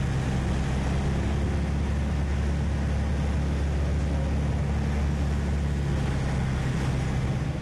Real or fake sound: real